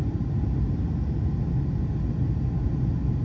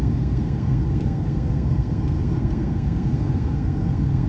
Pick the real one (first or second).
first